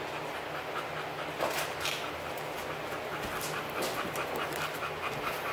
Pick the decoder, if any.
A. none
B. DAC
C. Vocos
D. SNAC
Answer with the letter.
A